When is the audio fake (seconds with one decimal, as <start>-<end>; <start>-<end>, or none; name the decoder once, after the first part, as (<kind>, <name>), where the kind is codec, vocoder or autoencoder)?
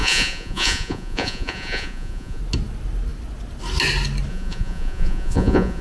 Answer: 0.0-2.4 (vocoder, Vocos); 4.3-5.8